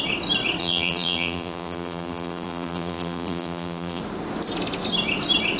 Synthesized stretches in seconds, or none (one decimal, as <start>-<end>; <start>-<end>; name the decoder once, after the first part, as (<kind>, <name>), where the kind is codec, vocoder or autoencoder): 0.6-4.0 (vocoder, BigVGAN v2)